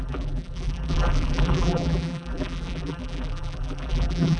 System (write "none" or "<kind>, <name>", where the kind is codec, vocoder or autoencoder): vocoder, BigVGAN v2